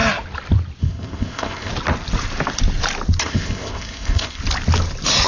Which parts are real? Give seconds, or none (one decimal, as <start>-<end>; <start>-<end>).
0.0-0.8; 1.7-3.2; 4.4-5.3